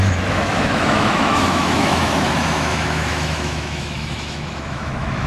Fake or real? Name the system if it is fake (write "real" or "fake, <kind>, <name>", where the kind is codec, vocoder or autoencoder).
fake, autoencoder, DAC-VAE